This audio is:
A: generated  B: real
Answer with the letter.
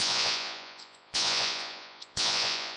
A